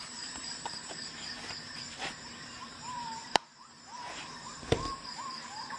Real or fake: fake